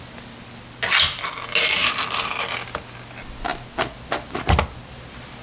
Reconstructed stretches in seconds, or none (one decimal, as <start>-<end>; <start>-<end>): none